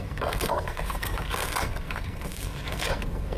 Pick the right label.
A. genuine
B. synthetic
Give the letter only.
B